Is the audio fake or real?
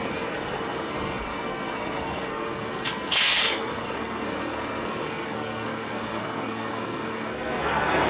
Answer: fake